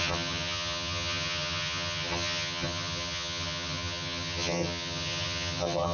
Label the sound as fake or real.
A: fake